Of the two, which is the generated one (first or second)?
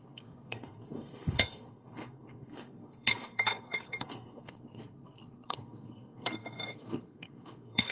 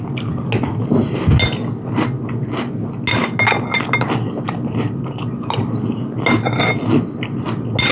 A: first